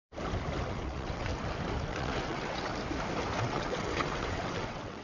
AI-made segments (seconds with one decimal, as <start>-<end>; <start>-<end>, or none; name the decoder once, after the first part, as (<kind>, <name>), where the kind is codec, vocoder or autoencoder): 0.7-1.3 (vocoder, WaveNeXt); 1.9-2.7; 3.4-5.0